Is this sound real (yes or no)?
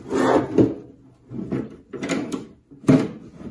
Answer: yes